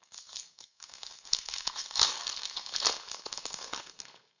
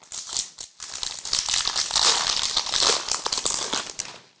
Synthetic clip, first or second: first